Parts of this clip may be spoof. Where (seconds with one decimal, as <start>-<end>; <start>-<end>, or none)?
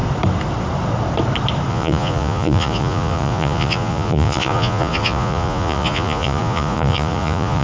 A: 1.7-7.6